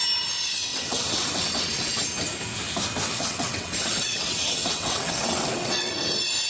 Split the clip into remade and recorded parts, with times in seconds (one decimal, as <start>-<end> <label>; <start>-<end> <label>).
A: 0.0-0.7 recorded; 0.7-1.9 remade; 1.9-3.1 recorded; 3.1-5.9 remade; 5.9-6.5 recorded